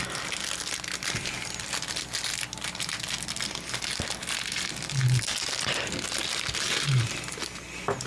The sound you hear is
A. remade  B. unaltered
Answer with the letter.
B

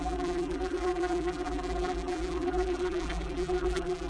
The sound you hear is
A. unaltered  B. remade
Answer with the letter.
B